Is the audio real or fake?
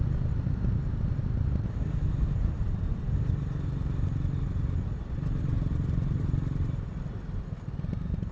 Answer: real